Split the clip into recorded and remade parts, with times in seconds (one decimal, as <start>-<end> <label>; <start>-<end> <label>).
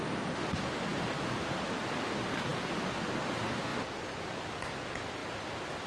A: 0.0-5.9 recorded